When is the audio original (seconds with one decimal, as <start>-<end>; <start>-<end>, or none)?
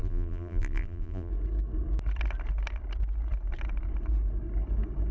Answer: 1.3-5.1